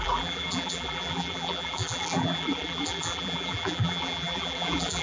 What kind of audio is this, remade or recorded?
remade